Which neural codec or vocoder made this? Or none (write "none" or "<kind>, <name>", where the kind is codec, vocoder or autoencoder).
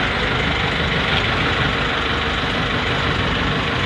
none